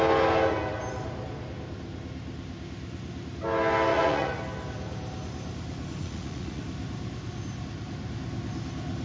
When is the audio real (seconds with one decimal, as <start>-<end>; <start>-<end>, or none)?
0.0-3.9; 4.4-6.0; 6.6-9.0